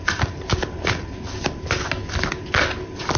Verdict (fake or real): real